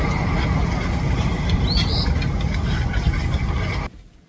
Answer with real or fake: real